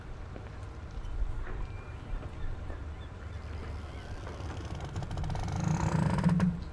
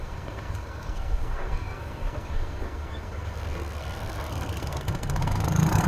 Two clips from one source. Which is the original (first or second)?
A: first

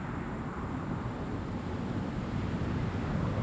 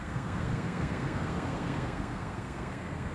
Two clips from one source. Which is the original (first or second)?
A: first